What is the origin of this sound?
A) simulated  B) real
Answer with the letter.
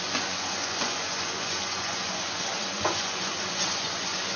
A